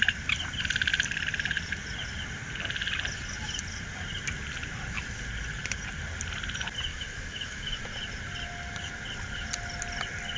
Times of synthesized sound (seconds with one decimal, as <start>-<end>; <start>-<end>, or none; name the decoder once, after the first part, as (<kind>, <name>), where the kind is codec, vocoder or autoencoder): 6.9-7.8 (autoencoder, DAC-VAE)